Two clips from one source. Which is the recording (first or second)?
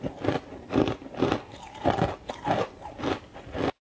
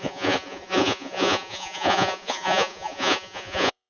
first